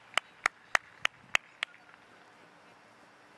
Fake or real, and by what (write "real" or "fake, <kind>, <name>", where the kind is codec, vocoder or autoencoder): real